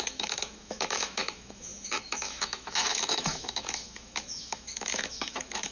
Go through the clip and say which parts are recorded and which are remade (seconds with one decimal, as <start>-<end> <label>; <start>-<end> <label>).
0.0-5.7 remade